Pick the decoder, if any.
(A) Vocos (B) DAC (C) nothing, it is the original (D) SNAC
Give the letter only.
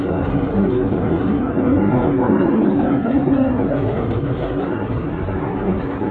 D